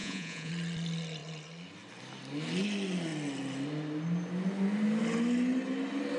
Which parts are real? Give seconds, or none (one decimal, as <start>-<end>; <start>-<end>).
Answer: 0.5-6.2